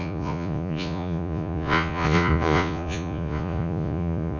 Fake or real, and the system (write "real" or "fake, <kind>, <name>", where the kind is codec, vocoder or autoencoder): fake, vocoder, Vocos